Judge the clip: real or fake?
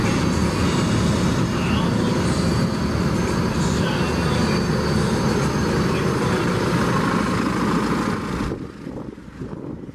real